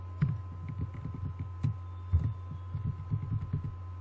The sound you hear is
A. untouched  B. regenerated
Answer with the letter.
A